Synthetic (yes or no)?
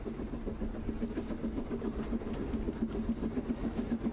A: no